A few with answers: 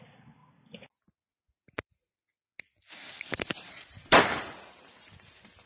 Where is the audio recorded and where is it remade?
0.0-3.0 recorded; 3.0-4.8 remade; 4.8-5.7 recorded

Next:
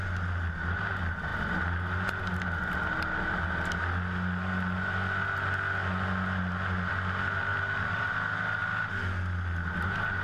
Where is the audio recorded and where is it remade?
0.0-7.5 recorded; 7.5-8.1 remade; 8.1-10.2 recorded

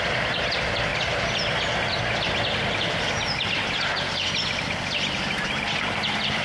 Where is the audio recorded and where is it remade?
0.0-6.4 recorded

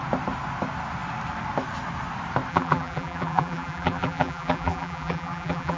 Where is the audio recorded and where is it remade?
0.0-2.5 recorded; 2.5-5.8 remade

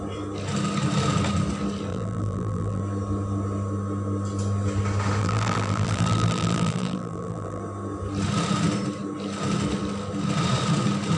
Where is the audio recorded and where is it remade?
0.0-1.9 recorded; 1.9-2.8 remade; 2.8-5.2 recorded; 5.2-7.6 remade; 7.6-11.2 recorded

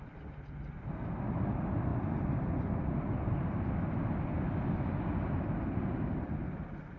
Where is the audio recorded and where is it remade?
0.0-7.0 recorded